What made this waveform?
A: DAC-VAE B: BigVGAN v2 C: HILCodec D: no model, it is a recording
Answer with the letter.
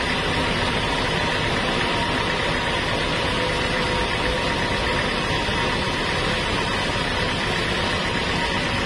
D